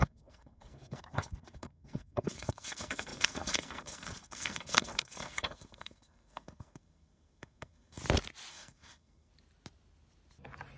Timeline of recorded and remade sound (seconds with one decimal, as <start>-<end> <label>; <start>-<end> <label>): 0.0-8.0 remade; 8.0-8.5 recorded; 8.5-9.3 remade; 9.3-10.8 recorded